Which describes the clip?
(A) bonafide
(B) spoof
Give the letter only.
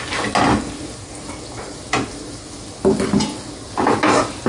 A